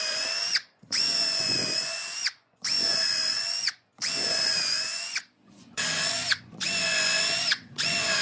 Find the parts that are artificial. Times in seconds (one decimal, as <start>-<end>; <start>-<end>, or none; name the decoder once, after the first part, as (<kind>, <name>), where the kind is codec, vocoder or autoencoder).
0.0-8.2 (vocoder, Vocos)